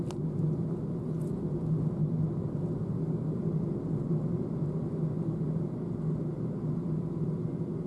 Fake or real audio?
real